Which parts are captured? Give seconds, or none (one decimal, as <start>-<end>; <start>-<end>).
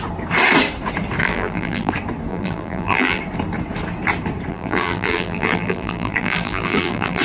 0.0-1.2; 1.9-2.3; 3.2-4.5